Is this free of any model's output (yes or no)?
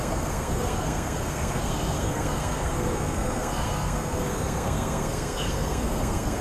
no